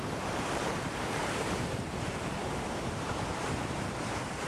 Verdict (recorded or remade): remade